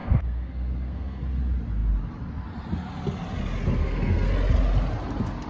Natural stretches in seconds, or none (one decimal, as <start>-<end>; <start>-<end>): 1.2-3.8; 4.3-5.5